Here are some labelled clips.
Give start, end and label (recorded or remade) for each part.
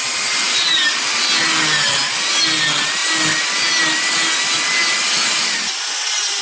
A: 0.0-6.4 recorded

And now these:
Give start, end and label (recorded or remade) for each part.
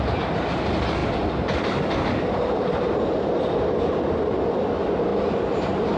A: 0.0-6.0 recorded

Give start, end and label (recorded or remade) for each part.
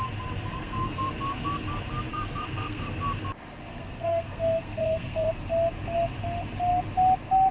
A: 0.0-0.5 recorded; 0.5-1.1 remade; 1.1-2.1 recorded; 2.1-3.0 remade; 3.0-3.7 recorded; 3.7-5.3 remade; 5.3-7.5 recorded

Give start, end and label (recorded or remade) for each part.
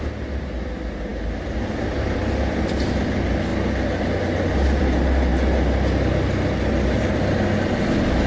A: 0.0-8.3 recorded